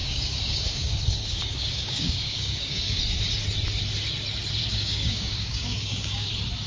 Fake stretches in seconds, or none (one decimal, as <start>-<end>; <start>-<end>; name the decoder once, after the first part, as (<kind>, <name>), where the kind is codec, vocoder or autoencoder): 0.0-3.0 (codec, DAC); 4.6-6.3